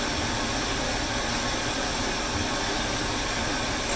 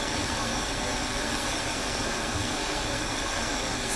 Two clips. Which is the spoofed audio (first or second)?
second